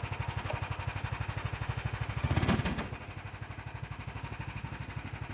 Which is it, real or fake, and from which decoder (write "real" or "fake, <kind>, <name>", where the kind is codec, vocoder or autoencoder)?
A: fake, autoencoder, DAC-VAE